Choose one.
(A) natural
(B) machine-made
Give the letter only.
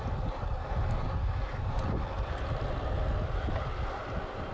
A